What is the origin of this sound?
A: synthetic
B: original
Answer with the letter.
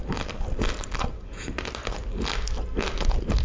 B